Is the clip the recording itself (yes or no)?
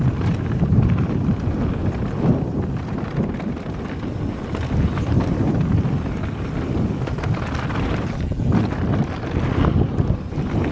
yes